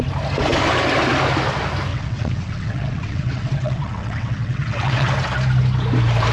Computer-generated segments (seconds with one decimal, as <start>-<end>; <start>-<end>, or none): 1.9-5.1